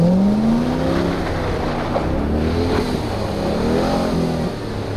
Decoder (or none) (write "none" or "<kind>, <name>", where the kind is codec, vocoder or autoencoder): none